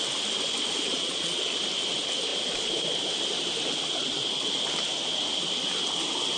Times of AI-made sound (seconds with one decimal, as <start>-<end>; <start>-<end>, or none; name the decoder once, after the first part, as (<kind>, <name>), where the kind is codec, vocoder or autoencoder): 0.9-1.4 (vocoder, Vocos)

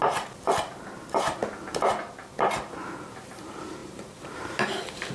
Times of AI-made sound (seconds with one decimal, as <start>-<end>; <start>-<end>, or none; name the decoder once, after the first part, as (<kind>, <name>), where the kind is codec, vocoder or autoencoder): 3.8-5.1 (vocoder, BigVGAN v2)

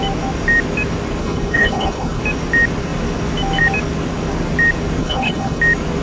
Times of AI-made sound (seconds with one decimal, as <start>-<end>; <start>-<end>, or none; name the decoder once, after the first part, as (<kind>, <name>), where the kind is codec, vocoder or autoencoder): 1.2-2.2 (codec, HILCodec); 5.0-5.6

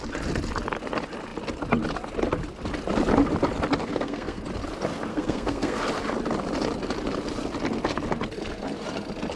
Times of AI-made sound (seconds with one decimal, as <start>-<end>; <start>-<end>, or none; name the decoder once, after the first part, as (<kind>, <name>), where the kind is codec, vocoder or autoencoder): 3.8-4.4 (codec, SNAC); 5.1-5.8

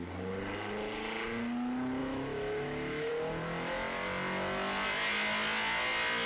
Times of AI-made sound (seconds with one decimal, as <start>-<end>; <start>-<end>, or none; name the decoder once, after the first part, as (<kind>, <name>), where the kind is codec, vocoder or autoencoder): 2.0-3.1 (autoencoder, DAC-VAE)

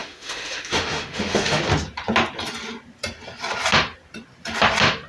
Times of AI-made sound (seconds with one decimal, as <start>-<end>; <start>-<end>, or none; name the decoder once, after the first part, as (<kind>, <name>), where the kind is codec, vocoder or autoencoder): 0.0-1.6 (autoencoder, DAC-VAE)

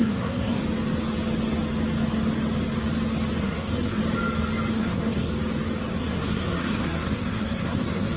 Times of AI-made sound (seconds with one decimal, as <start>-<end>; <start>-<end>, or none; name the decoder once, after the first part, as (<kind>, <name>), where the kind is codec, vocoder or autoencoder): 0.0-0.6 (codec, SNAC); 3.4-4.0; 4.7-5.3; 6.0-8.2

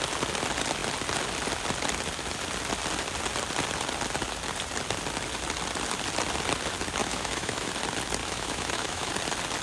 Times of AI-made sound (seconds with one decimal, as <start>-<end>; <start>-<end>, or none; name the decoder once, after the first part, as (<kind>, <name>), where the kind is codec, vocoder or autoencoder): 7.0-7.7 (autoencoder, DAC-VAE); 8.2-9.1